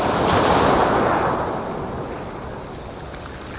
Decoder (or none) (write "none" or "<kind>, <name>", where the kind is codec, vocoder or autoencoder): none